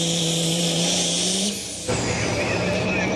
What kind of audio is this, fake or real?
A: fake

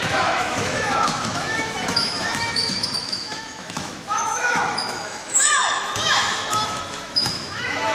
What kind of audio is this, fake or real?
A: fake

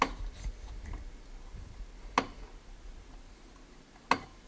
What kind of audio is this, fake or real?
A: real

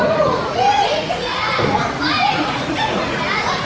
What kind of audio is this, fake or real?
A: fake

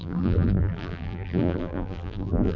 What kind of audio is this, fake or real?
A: fake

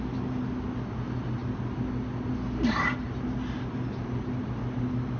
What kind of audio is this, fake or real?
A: real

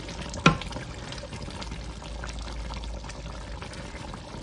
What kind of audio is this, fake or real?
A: real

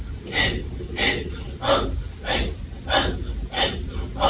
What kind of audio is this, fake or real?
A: real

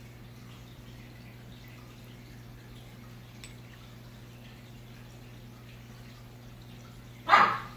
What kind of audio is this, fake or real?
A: real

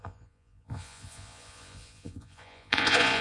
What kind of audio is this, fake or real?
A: fake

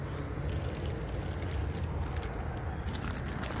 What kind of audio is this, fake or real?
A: real